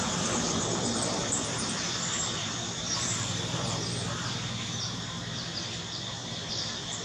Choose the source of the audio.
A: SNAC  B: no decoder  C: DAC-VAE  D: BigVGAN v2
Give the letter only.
D